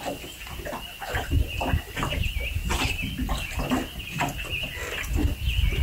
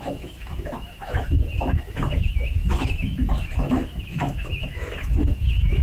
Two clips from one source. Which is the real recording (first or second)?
first